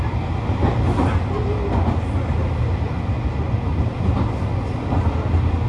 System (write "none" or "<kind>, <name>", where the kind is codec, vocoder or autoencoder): none